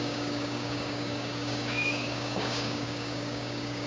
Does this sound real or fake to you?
fake